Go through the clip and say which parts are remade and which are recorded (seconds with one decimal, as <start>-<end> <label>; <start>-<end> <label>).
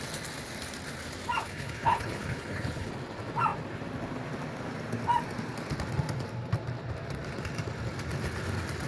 0.0-1.4 recorded; 1.4-2.9 remade; 2.9-8.9 recorded